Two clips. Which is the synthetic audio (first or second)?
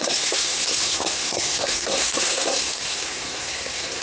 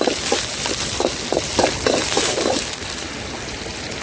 first